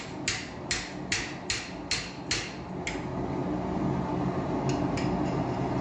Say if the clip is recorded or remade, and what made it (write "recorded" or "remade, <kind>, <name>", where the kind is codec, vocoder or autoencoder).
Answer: recorded